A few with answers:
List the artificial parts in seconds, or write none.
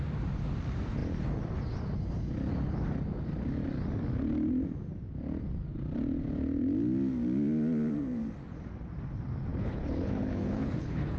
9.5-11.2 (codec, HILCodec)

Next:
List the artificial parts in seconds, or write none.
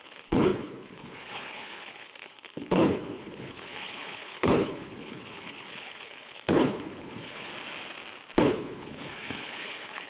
0.0-7.5 (codec, HILCodec); 8.4-10.1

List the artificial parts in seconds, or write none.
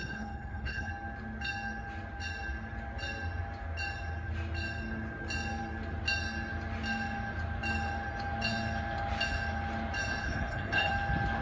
0.0-0.9 (codec, HILCodec); 10.2-10.9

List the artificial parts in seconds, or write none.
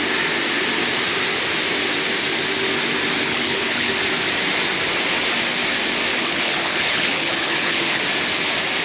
3.2-3.9 (codec, HILCodec); 6.1-8.0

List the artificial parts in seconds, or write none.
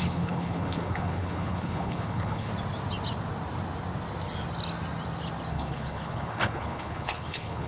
0.0-2.5 (codec, HILCodec); 5.5-7.7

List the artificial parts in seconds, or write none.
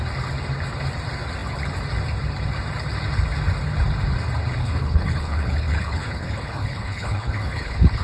4.6-8.0 (codec, HILCodec)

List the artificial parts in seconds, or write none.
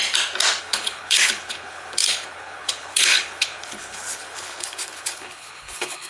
0.6-6.1 (codec, HILCodec)